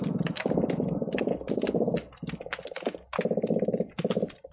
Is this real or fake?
real